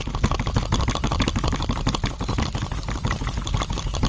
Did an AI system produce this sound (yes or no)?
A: no